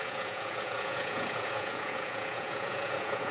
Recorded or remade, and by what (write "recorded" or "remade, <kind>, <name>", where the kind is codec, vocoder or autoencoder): remade, vocoder, Vocos